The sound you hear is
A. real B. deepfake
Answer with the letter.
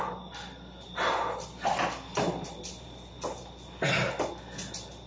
A